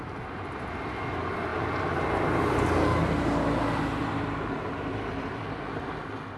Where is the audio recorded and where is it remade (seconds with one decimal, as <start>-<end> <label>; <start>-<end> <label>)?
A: 0.0-4.0 recorded; 4.0-6.0 remade; 6.0-6.4 recorded